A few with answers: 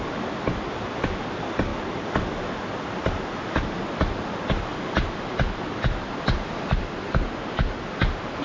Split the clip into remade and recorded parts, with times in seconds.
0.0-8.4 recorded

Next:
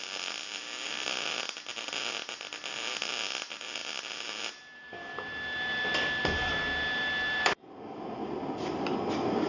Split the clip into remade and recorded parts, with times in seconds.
0.0-9.5 recorded

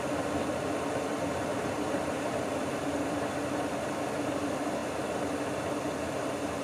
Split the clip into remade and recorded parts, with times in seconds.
0.0-1.5 recorded; 1.5-2.8 remade; 2.8-6.6 recorded

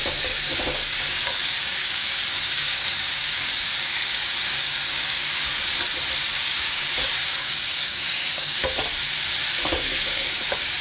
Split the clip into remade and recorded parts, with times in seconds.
0.0-5.2 remade; 5.2-6.4 recorded; 6.4-8.6 remade; 8.6-9.7 recorded; 9.7-10.8 remade

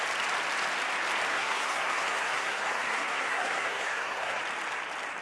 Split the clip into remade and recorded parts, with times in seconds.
0.0-1.3 recorded; 1.3-4.4 remade; 4.4-5.2 recorded

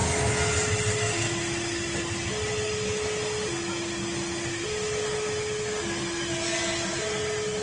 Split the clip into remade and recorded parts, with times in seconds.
0.0-7.6 recorded